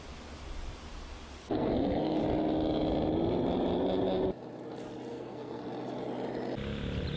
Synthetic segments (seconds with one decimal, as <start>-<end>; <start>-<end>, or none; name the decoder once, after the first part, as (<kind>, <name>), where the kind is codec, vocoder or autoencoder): 1.4-2.2 (codec, SNAC); 5.1-5.6